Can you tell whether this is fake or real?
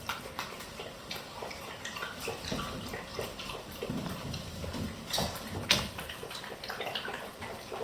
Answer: real